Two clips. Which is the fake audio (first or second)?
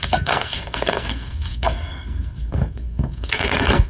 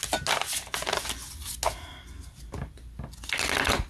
first